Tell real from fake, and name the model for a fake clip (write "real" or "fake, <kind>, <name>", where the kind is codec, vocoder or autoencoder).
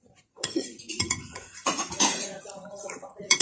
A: fake, vocoder, Vocos